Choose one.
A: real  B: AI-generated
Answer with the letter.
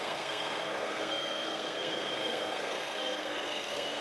B